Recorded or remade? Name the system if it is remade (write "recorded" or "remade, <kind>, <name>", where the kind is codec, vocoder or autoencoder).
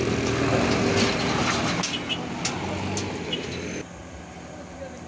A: recorded